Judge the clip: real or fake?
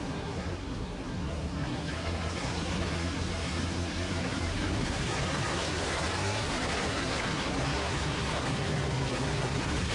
fake